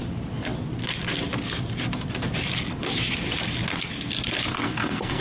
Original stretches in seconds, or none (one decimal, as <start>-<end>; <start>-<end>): 0.0-4.5